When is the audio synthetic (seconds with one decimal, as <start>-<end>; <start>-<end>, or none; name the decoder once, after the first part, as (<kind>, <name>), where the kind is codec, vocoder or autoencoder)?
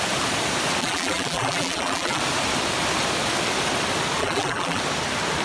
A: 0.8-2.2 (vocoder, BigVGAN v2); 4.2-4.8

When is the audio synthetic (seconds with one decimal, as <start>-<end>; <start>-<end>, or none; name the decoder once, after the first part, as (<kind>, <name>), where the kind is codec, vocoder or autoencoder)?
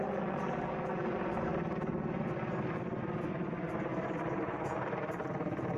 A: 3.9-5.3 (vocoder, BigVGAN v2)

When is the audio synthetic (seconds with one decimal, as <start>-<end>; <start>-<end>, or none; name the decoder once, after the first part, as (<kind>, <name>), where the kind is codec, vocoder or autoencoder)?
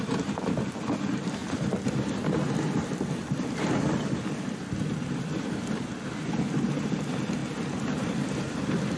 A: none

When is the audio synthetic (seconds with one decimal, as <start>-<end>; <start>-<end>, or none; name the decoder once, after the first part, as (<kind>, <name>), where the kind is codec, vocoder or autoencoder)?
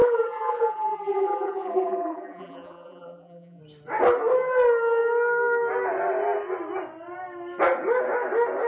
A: 0.0-3.6 (vocoder, BigVGAN v2)